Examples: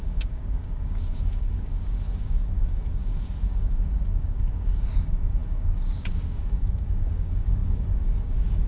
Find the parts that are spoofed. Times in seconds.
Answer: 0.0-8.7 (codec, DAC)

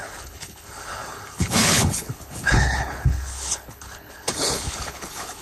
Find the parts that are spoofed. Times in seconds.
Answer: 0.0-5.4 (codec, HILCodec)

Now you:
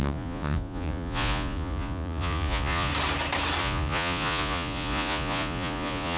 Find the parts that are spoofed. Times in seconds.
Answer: 0.0-2.9 (vocoder, Vocos); 3.6-6.2

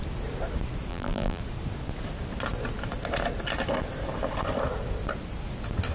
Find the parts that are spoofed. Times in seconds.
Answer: 0.9-1.4 (vocoder, BigVGAN v2)